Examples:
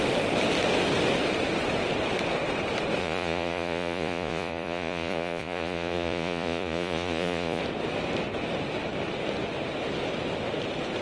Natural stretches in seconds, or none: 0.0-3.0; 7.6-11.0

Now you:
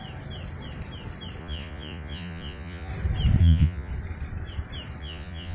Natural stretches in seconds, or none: 0.0-1.4; 2.9-3.4; 3.9-5.0

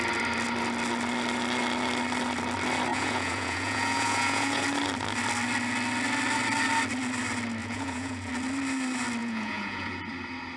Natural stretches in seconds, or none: 0.0-2.9; 4.6-7.6; 8.3-9.2; 10.0-10.6

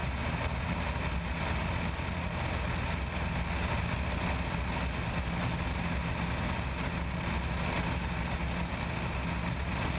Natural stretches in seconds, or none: 0.0-10.0

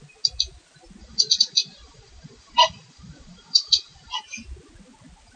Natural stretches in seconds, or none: 0.0-1.0; 4.2-5.4

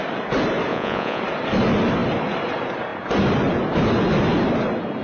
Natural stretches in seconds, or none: 0.0-0.7; 1.2-5.0

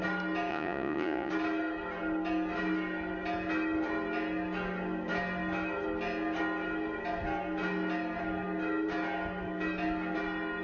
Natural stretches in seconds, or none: 0.0-0.5; 1.3-10.6

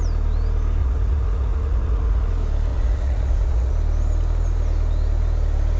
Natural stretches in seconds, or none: 0.0-0.8; 2.3-2.7; 3.7-5.8